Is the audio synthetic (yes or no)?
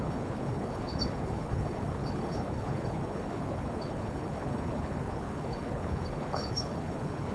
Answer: yes